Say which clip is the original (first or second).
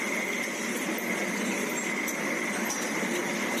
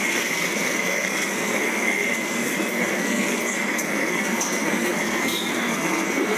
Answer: first